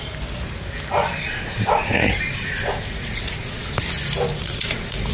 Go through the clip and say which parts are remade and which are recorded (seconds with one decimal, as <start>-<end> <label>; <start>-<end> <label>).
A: 0.0-1.3 recorded; 1.3-3.8 remade; 3.8-4.3 recorded; 4.3-5.1 remade